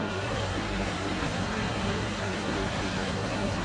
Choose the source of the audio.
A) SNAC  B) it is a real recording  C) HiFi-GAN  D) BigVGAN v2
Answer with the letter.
A